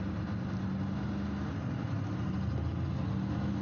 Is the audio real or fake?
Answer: real